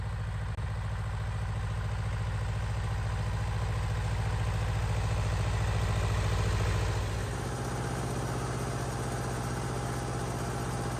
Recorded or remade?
recorded